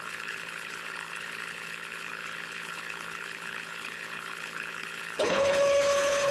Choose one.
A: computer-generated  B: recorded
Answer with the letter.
A